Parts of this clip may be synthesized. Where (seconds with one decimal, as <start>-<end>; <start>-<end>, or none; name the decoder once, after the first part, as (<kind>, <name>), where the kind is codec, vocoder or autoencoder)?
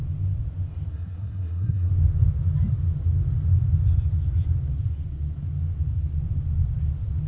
0.9-1.9 (codec, SNAC)